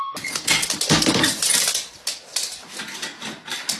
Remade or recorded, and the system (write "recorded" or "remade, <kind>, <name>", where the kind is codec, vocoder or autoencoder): recorded